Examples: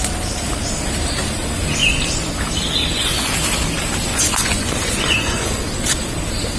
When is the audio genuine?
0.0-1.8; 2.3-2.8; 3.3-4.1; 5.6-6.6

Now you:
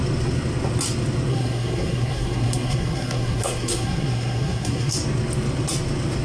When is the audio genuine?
0.0-1.3; 4.9-6.2

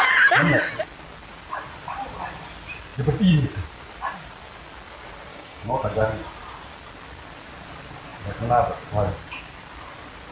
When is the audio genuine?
0.0-5.3; 6.0-10.3

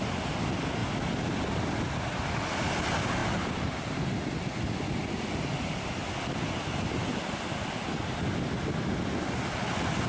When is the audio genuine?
0.0-10.1

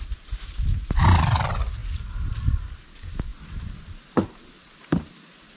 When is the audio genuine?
0.0-5.6

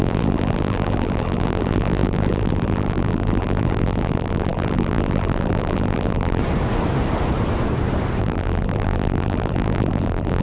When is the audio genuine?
6.4-8.2

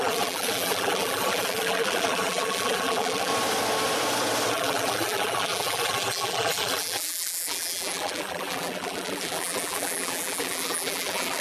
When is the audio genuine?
3.3-4.5